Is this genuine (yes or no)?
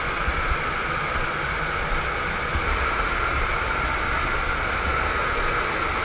yes